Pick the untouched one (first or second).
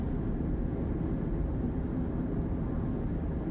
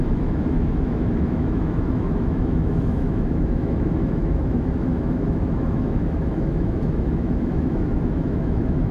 first